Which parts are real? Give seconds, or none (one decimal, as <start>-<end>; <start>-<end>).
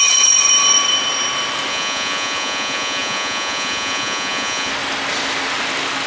0.0-1.7; 4.7-6.1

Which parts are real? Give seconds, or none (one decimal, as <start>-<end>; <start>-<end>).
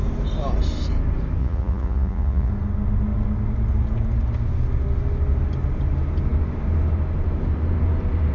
0.0-1.4; 2.5-8.3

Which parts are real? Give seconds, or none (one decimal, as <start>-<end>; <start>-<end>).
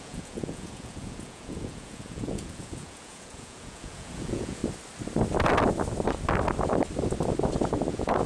4.6-7.9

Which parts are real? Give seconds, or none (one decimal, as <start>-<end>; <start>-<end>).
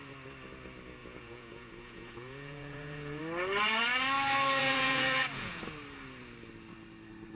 0.0-1.0; 3.2-4.6; 5.6-7.4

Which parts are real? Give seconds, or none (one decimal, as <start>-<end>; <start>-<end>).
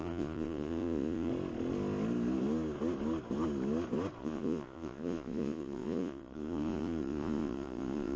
1.3-4.2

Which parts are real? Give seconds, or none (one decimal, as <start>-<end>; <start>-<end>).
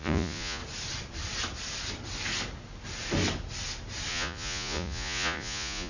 0.6-4.1